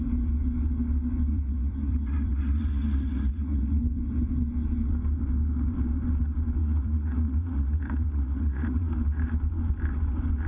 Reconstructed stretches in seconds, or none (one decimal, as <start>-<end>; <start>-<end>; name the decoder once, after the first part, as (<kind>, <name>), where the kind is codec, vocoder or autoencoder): 1.3-3.8 (vocoder, Vocos); 6.6-8.9